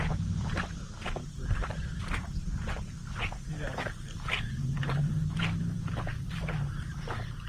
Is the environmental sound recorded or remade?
remade